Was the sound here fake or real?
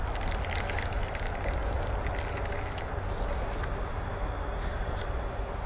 real